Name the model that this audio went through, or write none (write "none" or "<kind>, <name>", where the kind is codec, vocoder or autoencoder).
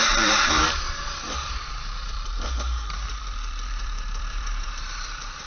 vocoder, BigVGAN v2